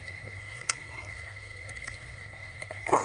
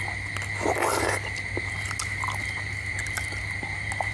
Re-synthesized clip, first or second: first